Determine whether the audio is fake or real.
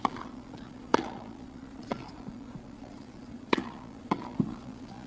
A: fake